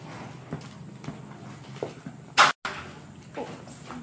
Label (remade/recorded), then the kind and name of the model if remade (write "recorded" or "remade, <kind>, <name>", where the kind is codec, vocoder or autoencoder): recorded